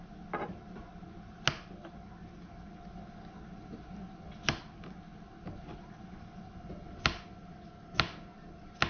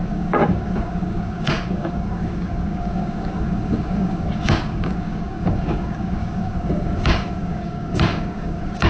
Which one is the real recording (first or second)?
first